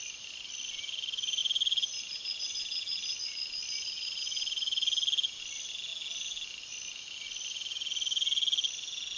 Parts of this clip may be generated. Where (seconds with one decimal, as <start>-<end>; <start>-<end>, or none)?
1.4-2.4